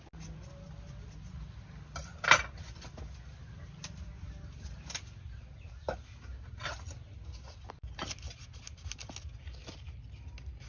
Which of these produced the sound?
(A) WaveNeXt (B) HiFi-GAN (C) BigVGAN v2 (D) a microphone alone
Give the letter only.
D